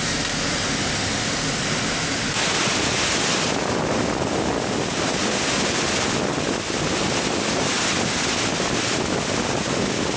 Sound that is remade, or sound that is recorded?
recorded